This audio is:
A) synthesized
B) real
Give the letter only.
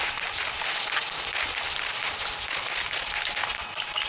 B